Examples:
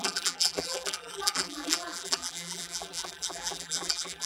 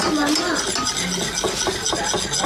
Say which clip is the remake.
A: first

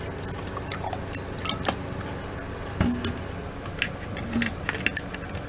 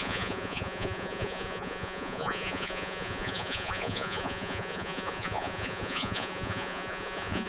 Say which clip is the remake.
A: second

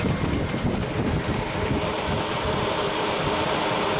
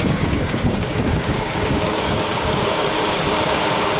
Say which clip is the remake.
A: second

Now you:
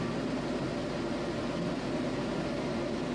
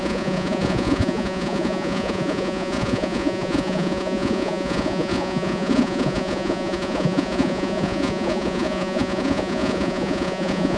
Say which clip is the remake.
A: second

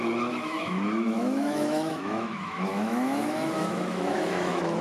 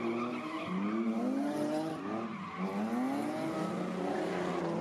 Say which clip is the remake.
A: first